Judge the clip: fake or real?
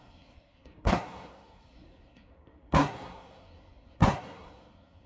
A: fake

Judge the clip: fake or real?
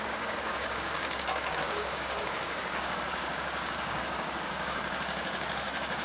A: fake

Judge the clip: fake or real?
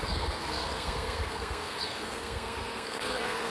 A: fake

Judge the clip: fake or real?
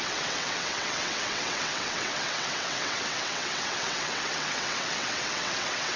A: fake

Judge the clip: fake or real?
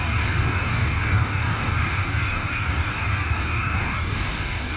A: fake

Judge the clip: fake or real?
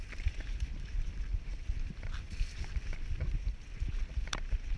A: real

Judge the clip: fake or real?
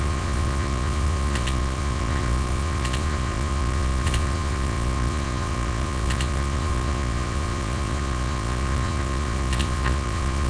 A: fake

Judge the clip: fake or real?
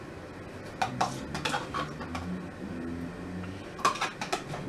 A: real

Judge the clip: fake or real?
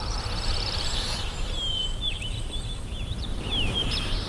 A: fake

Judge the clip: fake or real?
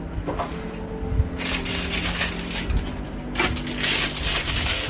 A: real